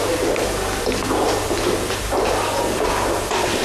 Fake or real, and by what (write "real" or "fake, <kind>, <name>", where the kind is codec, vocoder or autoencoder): real